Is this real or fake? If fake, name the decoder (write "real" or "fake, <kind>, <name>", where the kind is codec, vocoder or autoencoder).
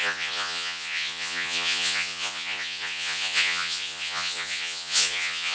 fake, vocoder, Vocos